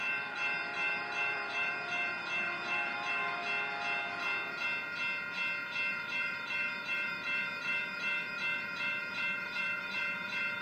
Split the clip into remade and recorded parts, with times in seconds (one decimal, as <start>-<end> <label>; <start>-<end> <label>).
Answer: 0.0-3.4 remade; 3.4-5.9 recorded; 5.9-10.6 remade